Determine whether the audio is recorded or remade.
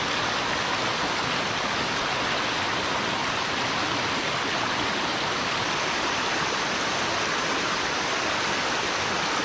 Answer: recorded